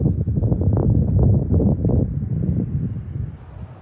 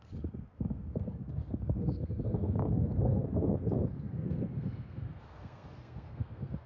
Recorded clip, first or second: first